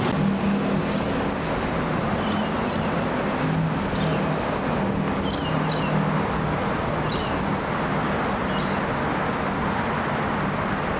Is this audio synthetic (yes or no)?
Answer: no